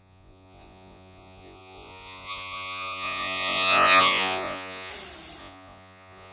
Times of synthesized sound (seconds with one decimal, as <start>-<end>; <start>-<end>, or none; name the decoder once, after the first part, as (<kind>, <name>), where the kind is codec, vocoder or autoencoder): 0.0-4.9 (vocoder, Vocos); 5.4-6.3